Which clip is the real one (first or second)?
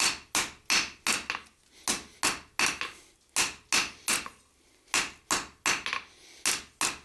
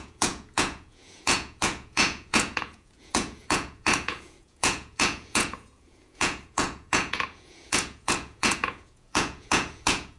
first